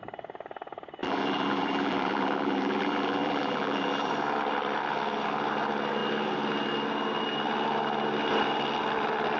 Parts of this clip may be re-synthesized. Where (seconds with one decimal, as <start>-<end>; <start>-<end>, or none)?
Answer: 1.0-4.1